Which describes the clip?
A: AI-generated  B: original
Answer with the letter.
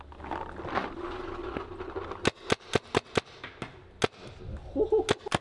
B